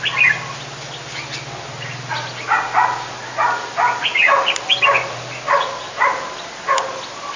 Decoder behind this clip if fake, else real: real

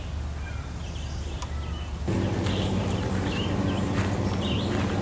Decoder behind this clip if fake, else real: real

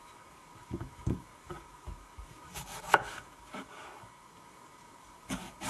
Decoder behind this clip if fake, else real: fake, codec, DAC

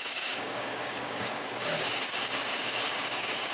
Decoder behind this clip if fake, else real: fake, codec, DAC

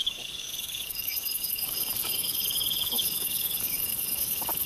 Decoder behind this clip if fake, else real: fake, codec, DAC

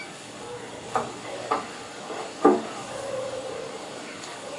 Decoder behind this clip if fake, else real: fake, codec, DAC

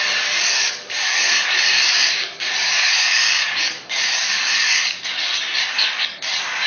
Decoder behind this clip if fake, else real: fake, codec, DAC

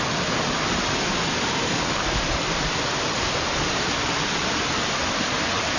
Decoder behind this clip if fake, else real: real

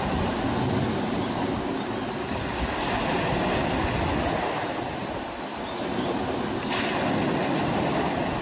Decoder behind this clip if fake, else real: real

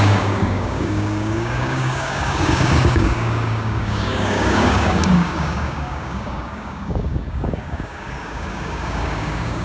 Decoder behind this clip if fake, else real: fake, codec, DAC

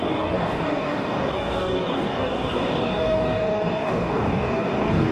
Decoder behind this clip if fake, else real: fake, codec, DAC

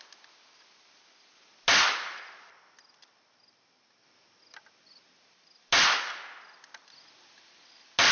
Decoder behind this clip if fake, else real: real